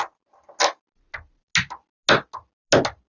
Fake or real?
real